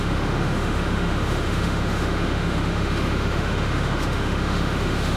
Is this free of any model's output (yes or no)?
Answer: no